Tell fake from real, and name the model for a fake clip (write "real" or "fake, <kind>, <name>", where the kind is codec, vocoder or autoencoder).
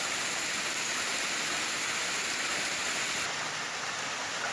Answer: real